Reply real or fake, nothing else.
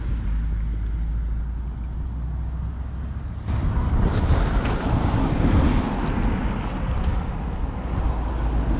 real